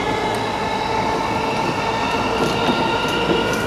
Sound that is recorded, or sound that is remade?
recorded